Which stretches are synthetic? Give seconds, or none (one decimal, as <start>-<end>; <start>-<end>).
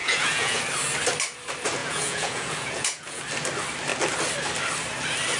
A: 0.0-0.6; 1.8-3.2